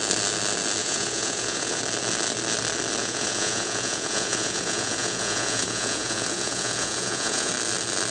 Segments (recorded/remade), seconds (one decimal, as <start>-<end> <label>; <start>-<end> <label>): 0.0-0.8 recorded; 0.8-1.8 remade; 1.8-3.0 recorded; 3.0-7.5 remade; 7.5-8.1 recorded